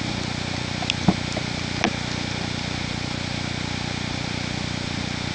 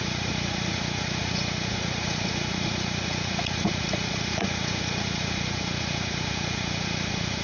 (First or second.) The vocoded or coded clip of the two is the second